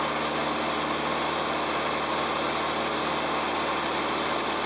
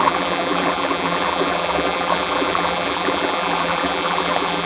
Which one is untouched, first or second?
first